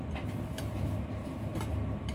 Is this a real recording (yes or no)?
yes